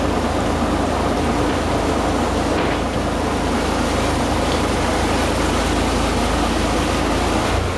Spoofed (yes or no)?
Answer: no